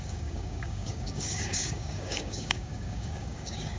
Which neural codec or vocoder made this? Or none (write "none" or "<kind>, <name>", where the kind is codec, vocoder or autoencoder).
codec, DAC